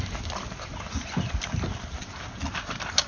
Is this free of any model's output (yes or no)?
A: yes